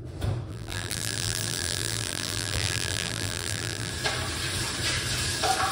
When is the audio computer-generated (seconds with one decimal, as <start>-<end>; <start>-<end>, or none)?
0.5-3.9